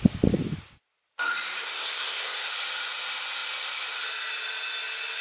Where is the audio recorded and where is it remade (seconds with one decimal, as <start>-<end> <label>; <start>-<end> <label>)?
0.0-1.6 recorded; 1.6-2.5 remade; 2.5-5.2 recorded